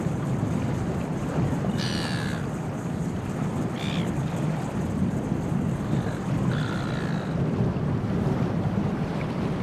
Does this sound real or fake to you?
fake